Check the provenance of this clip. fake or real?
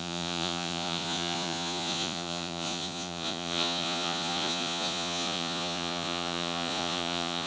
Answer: fake